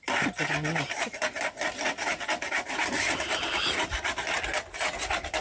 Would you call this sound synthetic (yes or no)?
no